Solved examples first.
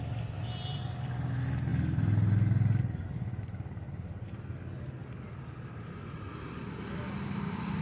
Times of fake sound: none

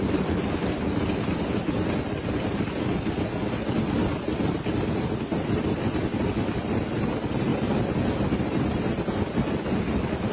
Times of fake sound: none

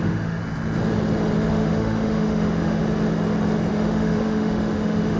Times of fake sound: 0.0-0.4; 1.5-2.8; 3.7-5.2

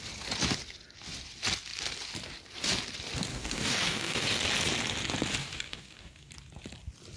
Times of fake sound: 3.3-4.4; 5.4-6.3

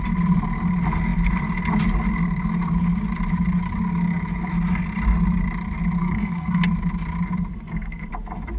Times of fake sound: 6.0-6.6; 7.5-8.1